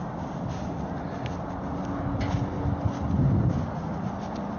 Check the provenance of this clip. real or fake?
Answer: real